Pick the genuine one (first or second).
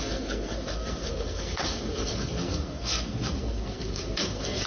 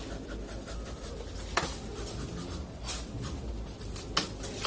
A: second